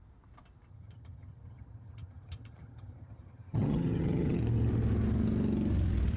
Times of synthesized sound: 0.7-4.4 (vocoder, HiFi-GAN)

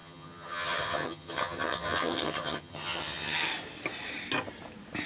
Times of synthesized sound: 0.0-3.5 (vocoder, HiFi-GAN)

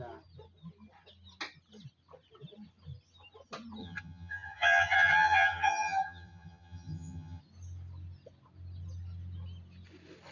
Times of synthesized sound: 3.8-7.4 (vocoder, HiFi-GAN)

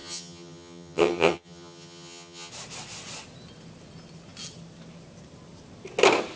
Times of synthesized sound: 0.0-2.5 (vocoder, HiFi-GAN)